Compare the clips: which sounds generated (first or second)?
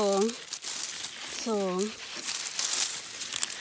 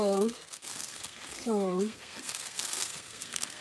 second